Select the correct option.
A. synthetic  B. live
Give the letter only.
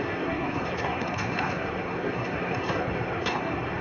A